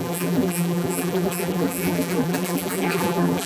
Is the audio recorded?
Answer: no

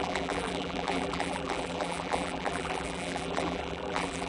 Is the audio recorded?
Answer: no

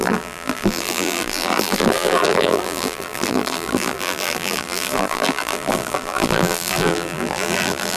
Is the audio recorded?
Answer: no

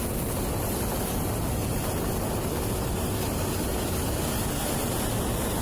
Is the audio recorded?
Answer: yes